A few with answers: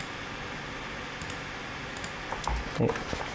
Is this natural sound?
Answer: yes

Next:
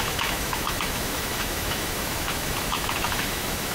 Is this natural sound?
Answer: no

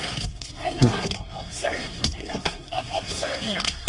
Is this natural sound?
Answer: no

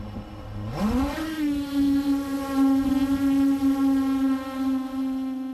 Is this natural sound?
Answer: yes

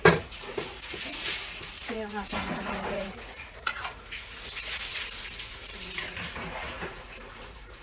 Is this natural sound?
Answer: no